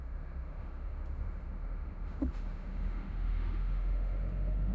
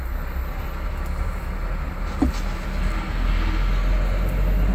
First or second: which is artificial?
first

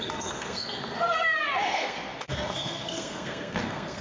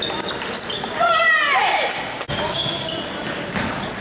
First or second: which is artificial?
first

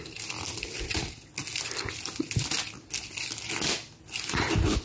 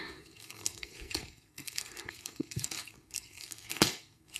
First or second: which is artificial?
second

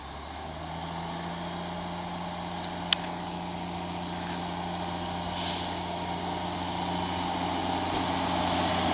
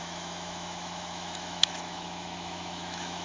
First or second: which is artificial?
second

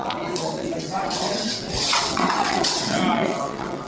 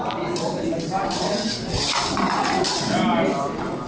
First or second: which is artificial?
first